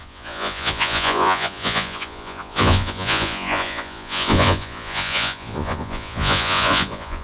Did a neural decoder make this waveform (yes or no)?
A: yes